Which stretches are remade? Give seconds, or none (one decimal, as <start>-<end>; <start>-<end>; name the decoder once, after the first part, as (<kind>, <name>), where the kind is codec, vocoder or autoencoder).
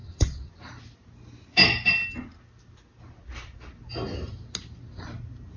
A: 0.0-0.5 (vocoder, WaveNeXt)